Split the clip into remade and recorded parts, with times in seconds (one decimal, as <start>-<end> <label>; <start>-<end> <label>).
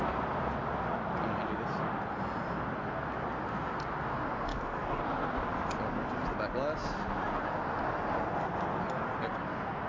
0.0-4.5 recorded; 4.5-5.0 remade; 5.0-9.9 recorded